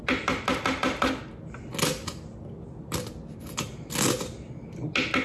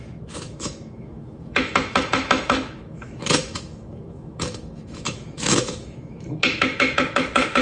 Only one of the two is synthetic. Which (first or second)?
second